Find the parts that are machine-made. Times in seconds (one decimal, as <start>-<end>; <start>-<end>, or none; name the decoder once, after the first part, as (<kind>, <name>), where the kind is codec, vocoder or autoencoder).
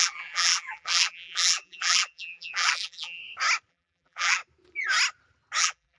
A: 0.0-3.2 (vocoder, BigVGAN v2); 3.7-4.4; 5.6-6.0